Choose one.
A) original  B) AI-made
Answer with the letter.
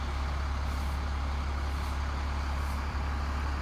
A